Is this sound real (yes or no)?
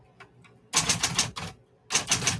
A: yes